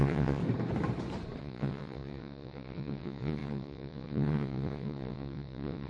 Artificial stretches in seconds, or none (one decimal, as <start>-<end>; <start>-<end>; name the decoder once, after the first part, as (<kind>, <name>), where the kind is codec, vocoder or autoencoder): 0.0-0.4 (vocoder, WaveNeXt); 1.4-5.9